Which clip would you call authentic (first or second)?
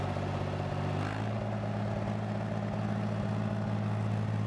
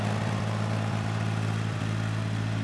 first